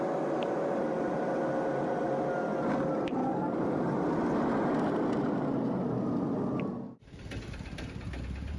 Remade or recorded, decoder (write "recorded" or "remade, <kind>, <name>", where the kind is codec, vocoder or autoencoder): recorded